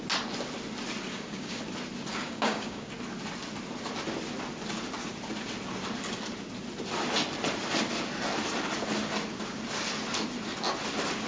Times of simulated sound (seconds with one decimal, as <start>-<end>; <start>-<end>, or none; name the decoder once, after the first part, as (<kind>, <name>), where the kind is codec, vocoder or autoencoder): 1.1-1.6 (codec, DAC); 2.1-2.9